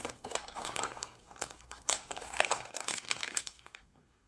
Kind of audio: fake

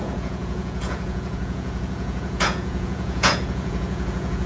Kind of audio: fake